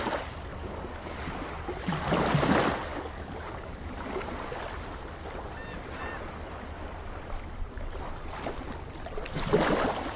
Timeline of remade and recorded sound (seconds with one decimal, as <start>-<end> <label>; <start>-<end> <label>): 0.0-0.5 recorded; 0.5-1.4 remade; 1.4-2.9 recorded; 2.9-3.9 remade; 3.9-10.2 recorded